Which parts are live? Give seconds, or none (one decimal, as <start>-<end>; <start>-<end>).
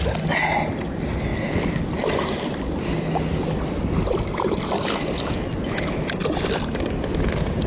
0.0-1.3; 5.9-7.7